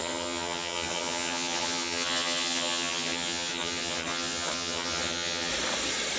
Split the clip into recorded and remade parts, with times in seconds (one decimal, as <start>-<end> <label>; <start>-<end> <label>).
0.0-5.5 remade; 5.5-6.2 recorded